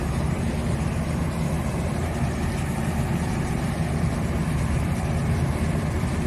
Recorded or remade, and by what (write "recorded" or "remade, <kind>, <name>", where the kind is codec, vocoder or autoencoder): remade, vocoder, BigVGAN v2